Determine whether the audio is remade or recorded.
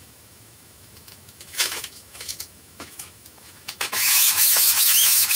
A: remade